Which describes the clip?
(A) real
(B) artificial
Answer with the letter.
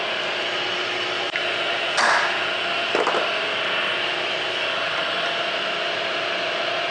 A